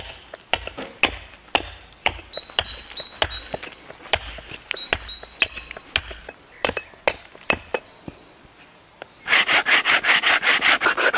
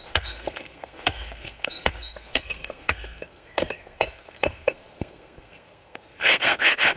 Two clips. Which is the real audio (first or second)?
first